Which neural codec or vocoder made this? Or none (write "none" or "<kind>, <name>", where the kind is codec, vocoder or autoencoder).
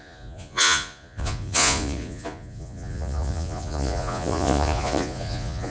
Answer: vocoder, Vocos